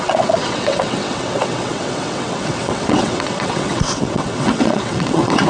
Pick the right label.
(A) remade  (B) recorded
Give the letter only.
A